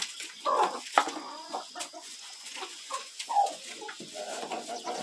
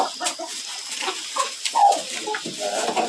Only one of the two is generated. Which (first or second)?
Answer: first